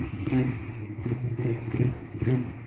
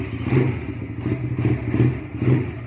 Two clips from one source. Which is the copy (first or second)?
first